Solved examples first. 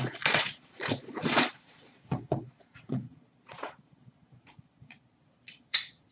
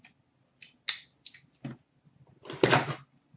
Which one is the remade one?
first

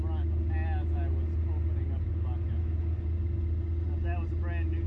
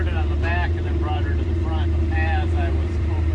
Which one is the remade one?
second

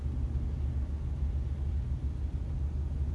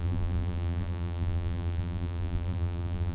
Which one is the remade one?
second